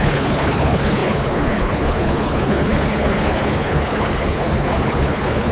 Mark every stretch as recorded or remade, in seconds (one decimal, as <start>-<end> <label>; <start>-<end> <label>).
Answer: 0.0-5.5 remade